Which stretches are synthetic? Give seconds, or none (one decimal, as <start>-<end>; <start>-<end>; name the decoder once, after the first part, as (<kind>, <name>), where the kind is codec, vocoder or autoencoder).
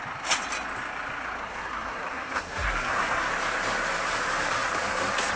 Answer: 1.4-3.3 (codec, SNAC)